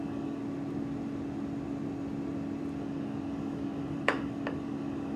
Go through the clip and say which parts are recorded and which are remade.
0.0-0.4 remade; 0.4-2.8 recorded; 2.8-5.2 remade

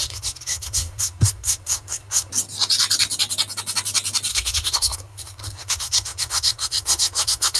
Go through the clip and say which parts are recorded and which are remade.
0.0-2.3 remade; 2.3-4.3 recorded; 4.3-7.6 remade

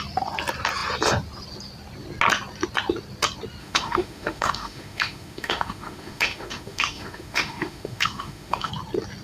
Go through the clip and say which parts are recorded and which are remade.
0.0-3.6 recorded; 3.6-8.7 remade; 8.7-9.2 recorded

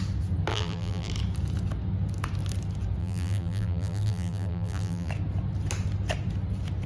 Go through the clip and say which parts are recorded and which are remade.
0.0-0.5 recorded; 0.5-1.1 remade; 1.1-3.0 recorded; 3.0-5.1 remade; 5.1-6.9 recorded

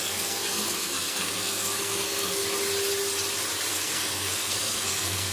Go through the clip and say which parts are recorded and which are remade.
0.0-2.4 remade; 2.4-3.7 recorded; 3.7-5.3 remade